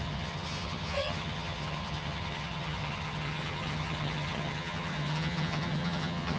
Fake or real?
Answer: fake